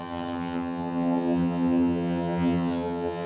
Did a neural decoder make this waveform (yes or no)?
yes